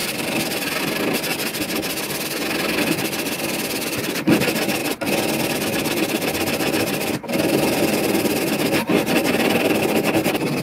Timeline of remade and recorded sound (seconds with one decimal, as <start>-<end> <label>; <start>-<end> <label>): 0.0-1.3 remade; 1.3-2.8 recorded; 2.8-10.6 remade